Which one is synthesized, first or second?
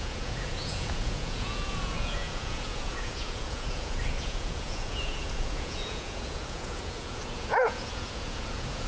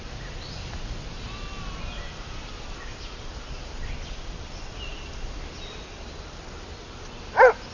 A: first